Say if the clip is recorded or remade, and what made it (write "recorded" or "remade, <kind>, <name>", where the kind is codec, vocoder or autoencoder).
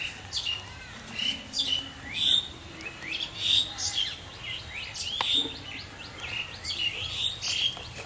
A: recorded